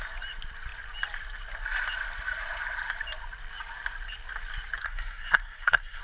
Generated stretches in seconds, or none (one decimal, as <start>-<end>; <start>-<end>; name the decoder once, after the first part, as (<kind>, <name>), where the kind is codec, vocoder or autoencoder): 4.8-6.0 (codec, SNAC)

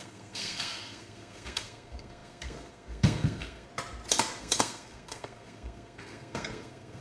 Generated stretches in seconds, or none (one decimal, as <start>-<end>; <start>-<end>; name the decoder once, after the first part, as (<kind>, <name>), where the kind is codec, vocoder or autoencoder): 0.0-3.7 (codec, SNAC); 4.4-7.0